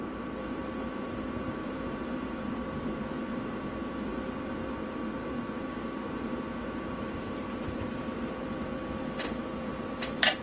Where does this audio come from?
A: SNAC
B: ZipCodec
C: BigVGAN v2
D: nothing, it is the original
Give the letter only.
C